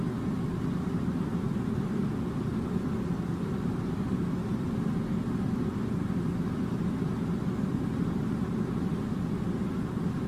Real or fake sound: real